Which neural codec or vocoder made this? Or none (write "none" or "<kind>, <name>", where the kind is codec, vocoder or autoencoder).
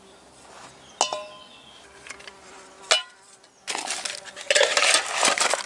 none